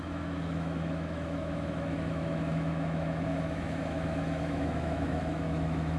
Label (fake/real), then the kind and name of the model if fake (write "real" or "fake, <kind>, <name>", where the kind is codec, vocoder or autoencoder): fake, autoencoder, DAC-VAE